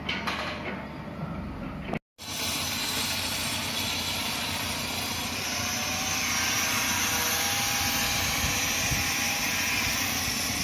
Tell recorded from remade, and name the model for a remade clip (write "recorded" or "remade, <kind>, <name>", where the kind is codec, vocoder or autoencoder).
recorded